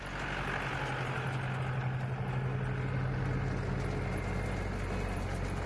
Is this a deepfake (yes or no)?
no